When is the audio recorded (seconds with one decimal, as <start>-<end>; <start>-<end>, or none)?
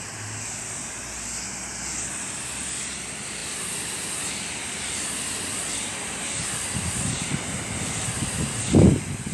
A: 0.0-9.3